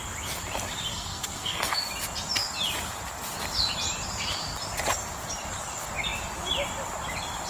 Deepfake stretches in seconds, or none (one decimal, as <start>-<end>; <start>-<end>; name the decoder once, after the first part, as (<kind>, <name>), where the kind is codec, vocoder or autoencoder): 0.9-1.8 (codec, SNAC)